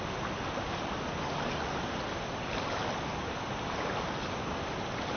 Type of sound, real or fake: real